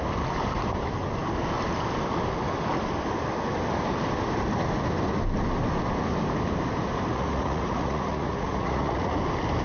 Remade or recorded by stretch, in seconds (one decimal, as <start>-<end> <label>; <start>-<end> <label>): 0.0-7.1 recorded; 7.1-9.2 remade; 9.2-9.6 recorded